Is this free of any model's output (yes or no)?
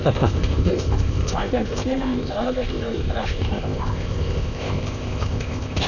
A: no